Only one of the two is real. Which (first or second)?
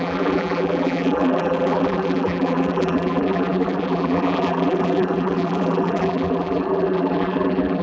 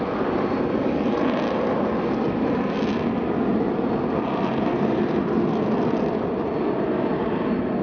second